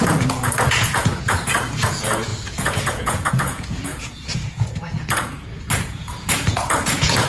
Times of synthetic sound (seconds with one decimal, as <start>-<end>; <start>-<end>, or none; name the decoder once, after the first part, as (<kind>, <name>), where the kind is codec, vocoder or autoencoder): 0.0-7.3 (vocoder, Vocos)